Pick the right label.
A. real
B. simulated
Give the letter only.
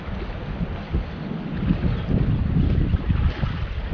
A